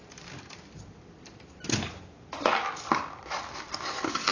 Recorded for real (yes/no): yes